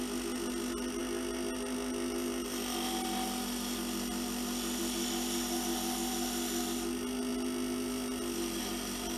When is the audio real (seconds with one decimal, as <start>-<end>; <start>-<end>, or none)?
0.0-9.2